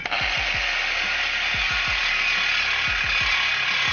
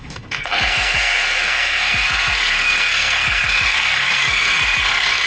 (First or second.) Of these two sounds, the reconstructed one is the second